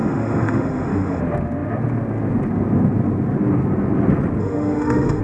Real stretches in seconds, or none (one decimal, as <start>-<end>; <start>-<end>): 1.2-4.4